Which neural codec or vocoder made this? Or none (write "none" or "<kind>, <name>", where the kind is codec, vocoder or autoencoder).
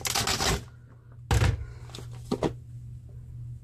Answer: none